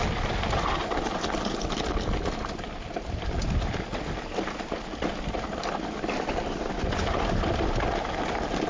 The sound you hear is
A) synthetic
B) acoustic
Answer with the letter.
B